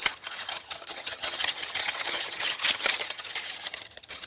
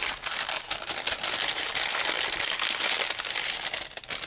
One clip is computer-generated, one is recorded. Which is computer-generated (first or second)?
first